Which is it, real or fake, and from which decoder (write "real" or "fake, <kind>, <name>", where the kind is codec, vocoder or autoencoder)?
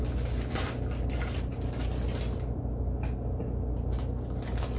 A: real